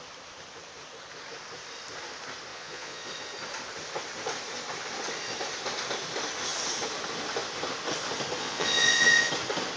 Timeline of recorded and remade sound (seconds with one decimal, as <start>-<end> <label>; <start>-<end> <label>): 0.0-2.5 recorded; 2.5-3.1 remade; 3.1-8.4 recorded; 8.4-9.3 remade; 9.3-9.8 recorded